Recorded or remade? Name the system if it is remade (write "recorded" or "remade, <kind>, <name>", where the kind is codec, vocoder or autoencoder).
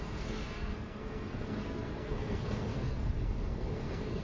remade, codec, SNAC